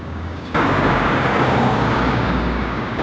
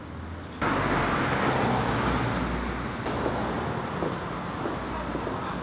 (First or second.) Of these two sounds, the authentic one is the second